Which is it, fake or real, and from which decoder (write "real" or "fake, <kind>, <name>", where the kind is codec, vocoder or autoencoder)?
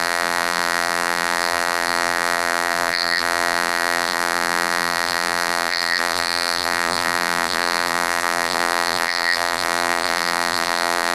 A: fake, vocoder, BigVGAN v2